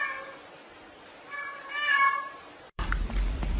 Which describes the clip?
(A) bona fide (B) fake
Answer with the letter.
B